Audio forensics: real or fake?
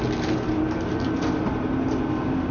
real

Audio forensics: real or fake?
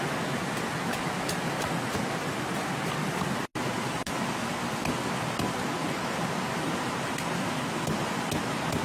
real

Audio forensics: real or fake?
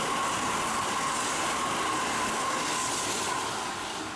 real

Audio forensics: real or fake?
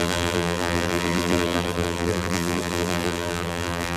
fake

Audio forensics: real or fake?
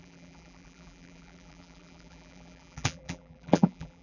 fake